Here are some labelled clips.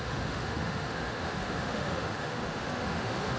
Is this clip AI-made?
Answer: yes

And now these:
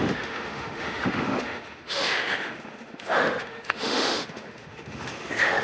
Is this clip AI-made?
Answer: yes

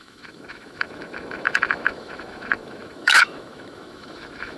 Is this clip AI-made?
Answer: yes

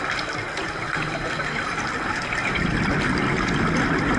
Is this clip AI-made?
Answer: no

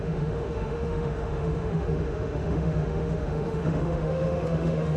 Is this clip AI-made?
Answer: yes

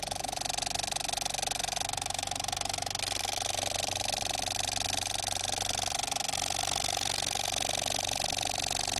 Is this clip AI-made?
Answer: no